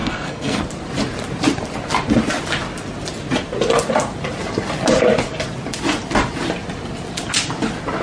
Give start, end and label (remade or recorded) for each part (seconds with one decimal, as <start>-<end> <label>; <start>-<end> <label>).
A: 0.0-0.6 remade; 0.6-8.0 recorded